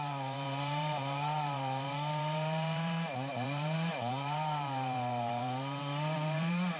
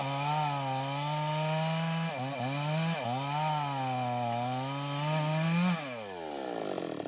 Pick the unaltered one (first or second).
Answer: second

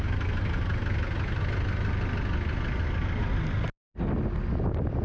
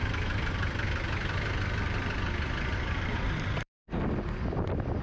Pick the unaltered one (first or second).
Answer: first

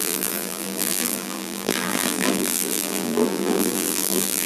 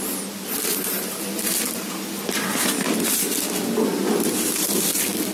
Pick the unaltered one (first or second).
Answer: second